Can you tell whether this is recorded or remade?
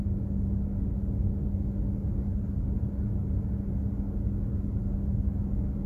recorded